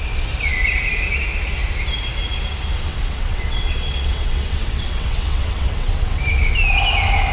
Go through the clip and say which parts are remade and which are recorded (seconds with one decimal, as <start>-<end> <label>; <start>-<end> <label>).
0.0-2.9 recorded; 2.9-6.2 remade; 6.2-7.3 recorded

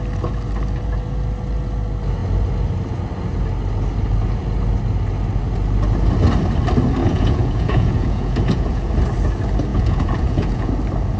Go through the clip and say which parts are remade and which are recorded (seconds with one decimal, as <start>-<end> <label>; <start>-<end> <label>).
0.0-7.0 recorded; 7.0-8.9 remade; 8.9-9.7 recorded; 9.7-10.7 remade; 10.7-11.2 recorded

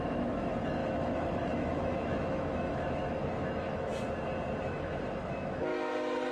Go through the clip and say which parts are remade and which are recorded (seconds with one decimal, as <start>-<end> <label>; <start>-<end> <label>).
0.0-3.9 remade; 3.9-4.6 recorded; 4.6-5.7 remade; 5.7-6.3 recorded

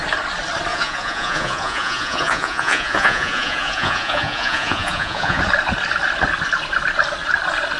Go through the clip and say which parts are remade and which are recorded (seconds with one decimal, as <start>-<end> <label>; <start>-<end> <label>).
0.0-0.7 recorded; 0.7-5.4 remade; 5.4-7.8 recorded

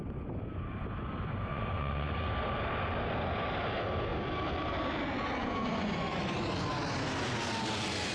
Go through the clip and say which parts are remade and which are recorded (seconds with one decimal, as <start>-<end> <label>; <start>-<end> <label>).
0.0-1.5 recorded; 1.5-2.3 remade; 2.3-5.4 recorded; 5.4-6.2 remade; 6.2-8.1 recorded

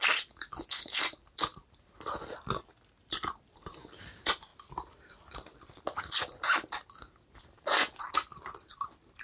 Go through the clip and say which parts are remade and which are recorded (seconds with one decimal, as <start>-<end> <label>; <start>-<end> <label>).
0.0-9.2 recorded